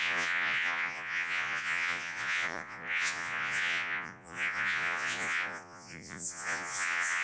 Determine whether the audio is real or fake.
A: fake